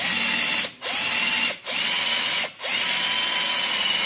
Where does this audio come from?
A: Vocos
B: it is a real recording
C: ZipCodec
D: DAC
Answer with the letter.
B